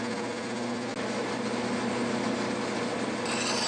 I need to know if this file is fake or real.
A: real